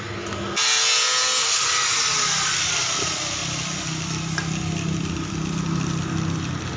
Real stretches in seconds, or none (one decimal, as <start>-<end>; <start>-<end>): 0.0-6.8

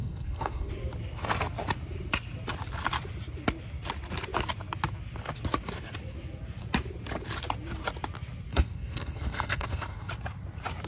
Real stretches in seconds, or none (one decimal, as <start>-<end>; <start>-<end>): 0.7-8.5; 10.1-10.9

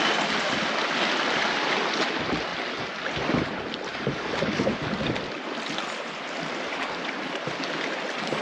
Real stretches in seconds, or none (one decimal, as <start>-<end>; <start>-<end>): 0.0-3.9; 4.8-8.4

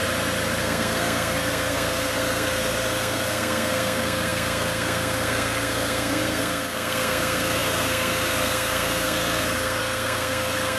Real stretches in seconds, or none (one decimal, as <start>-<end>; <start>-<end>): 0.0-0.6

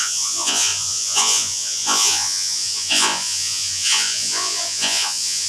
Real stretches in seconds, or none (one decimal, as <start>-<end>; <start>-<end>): none

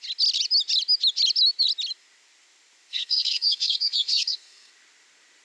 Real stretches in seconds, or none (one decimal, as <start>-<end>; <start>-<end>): 0.0-2.9; 4.7-5.4

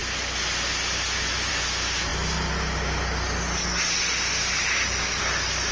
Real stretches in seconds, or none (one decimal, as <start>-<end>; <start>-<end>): 0.0-5.7

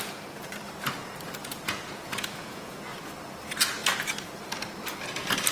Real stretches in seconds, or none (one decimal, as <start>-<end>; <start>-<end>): 0.0-1.4; 2.8-5.5